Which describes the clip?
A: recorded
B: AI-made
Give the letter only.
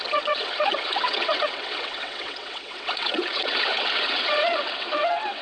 B